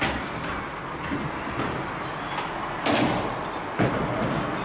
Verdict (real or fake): real